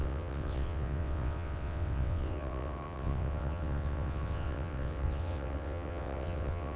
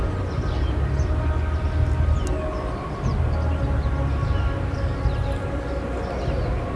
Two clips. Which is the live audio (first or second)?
second